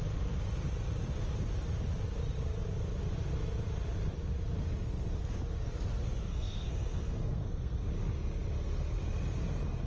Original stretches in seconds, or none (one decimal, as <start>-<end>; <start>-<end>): 0.0-6.3; 7.9-9.9